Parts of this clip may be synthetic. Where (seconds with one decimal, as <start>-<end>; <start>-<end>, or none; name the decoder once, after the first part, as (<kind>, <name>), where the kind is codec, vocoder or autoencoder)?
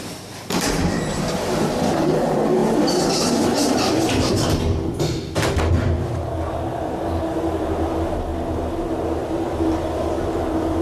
0.0-2.6 (vocoder, BigVGAN v2); 6.5-8.3; 9.9-10.8